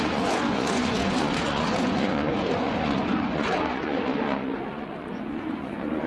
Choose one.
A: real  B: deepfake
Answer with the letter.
B